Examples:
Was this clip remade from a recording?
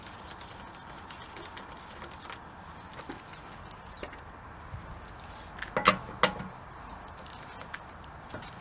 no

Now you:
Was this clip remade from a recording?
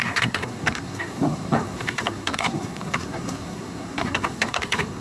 yes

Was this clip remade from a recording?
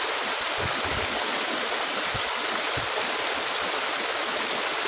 no